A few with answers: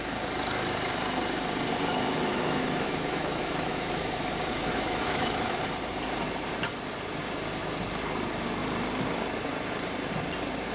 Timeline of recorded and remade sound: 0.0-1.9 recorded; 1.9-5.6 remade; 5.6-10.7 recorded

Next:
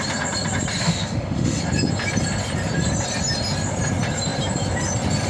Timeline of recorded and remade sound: 0.0-0.8 recorded; 0.8-1.6 remade; 1.6-5.3 recorded

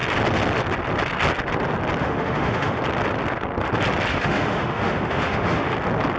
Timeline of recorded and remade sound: 0.0-2.0 recorded; 2.0-2.8 remade; 2.8-4.1 recorded; 4.1-5.7 remade; 5.7-6.2 recorded

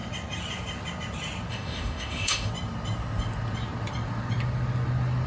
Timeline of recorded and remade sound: 0.0-1.5 recorded; 1.5-2.5 remade; 2.5-5.3 recorded

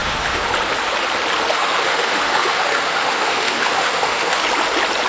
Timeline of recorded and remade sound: 0.0-0.5 remade; 0.5-1.5 recorded; 1.5-4.4 remade; 4.4-5.1 recorded

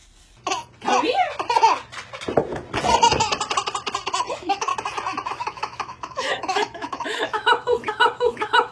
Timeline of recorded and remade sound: 0.0-4.3 recorded; 4.3-4.7 remade; 4.7-5.3 recorded; 5.3-8.7 remade

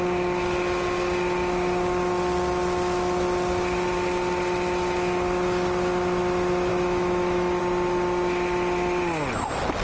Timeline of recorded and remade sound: 0.0-6.7 recorded; 6.7-7.6 remade; 7.6-9.8 recorded

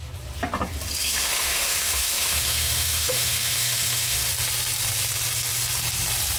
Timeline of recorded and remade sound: 0.0-1.0 recorded; 1.0-4.3 remade; 4.3-6.4 recorded